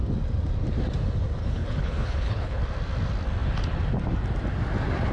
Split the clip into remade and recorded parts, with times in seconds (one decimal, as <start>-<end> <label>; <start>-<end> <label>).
0.0-1.4 recorded; 1.4-2.6 remade; 2.6-5.1 recorded